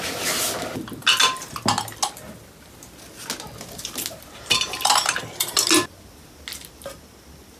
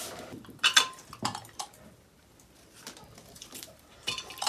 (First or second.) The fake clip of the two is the second